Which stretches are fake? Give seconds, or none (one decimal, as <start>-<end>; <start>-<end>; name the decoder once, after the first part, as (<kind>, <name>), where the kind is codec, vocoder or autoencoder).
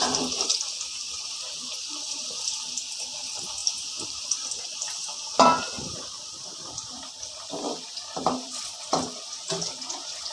0.0-10.3 (vocoder, BigVGAN v2)